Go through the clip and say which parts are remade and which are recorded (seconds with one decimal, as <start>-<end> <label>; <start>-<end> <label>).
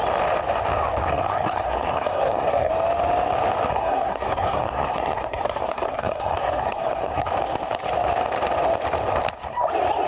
0.0-1.0 recorded; 1.0-2.7 remade; 2.7-3.7 recorded; 3.7-7.3 remade; 7.3-10.1 recorded